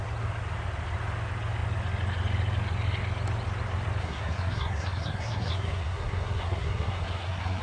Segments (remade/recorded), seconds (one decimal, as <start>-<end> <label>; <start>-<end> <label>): 0.0-4.0 recorded; 4.0-7.6 remade